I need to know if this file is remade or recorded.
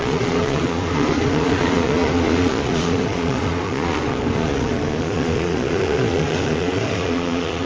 remade